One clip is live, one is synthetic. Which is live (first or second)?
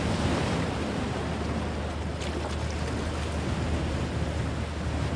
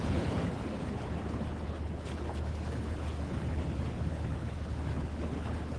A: first